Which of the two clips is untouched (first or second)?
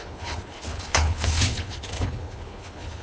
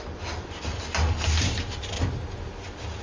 second